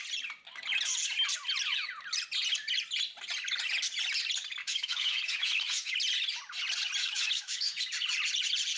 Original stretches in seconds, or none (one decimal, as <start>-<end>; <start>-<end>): 0.0-4.6; 5.9-7.0; 7.8-8.8